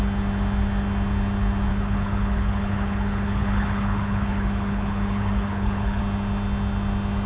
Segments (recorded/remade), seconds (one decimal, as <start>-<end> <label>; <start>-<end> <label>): 0.0-1.7 recorded; 1.7-6.0 remade; 6.0-7.3 recorded